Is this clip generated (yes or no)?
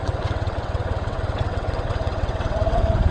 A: yes